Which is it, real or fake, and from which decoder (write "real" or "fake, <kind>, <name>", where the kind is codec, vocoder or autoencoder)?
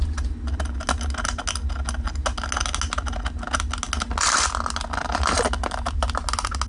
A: real